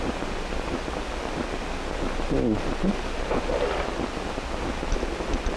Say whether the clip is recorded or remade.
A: recorded